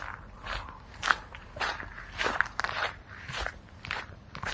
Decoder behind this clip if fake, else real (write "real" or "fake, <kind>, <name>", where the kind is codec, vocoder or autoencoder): fake, vocoder, BigVGAN v2